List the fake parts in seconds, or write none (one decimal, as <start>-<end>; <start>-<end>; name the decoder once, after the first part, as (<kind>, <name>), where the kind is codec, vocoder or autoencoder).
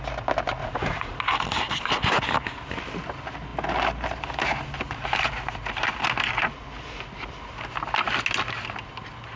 0.6-1.2 (vocoder, Vocos)